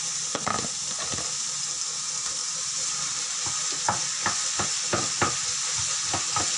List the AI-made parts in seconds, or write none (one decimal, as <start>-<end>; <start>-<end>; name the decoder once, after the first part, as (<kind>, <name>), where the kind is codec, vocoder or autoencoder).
none